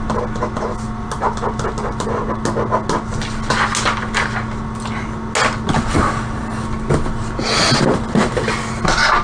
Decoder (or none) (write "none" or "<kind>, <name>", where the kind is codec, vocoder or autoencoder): none